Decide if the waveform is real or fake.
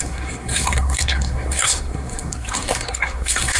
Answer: fake